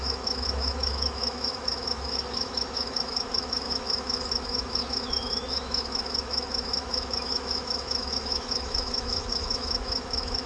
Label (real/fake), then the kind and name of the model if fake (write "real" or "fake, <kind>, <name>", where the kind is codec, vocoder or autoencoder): fake, autoencoder, DAC-VAE